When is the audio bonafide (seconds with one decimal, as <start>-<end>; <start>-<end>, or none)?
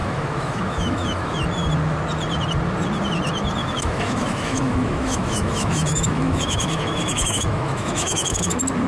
1.4-3.6; 8.5-8.9